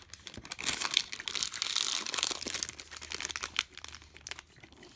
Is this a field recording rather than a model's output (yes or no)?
yes